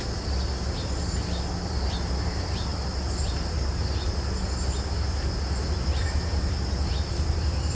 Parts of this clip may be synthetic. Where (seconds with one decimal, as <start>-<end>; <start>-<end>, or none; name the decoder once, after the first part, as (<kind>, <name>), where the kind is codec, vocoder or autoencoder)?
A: none